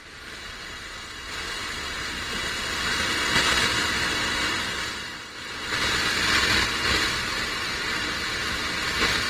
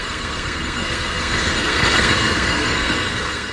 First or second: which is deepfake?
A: second